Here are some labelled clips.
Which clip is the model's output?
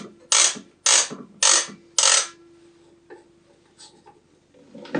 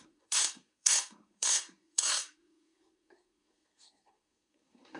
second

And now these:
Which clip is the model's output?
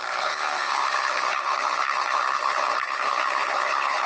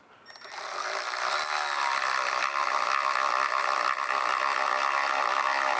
first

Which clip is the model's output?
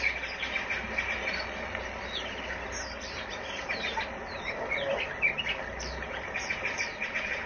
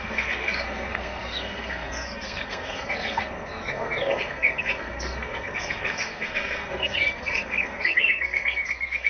second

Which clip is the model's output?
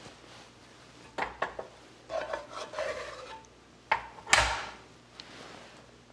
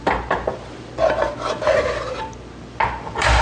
second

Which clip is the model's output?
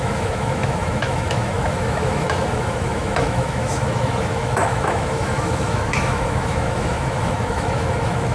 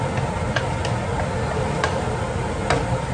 first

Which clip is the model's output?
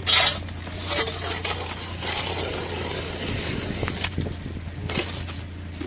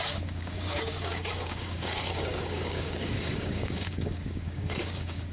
second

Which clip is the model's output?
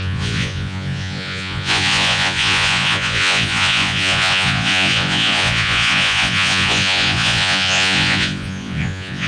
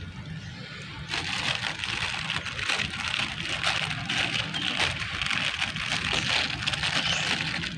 first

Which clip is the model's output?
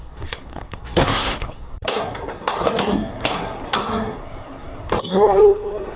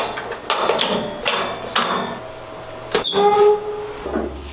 first